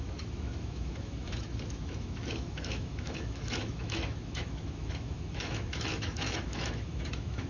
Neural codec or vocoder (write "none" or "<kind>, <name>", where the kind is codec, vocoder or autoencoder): autoencoder, DAC-VAE